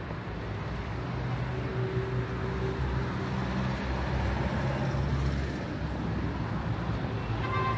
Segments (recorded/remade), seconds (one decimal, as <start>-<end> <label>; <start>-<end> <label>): 0.0-7.8 recorded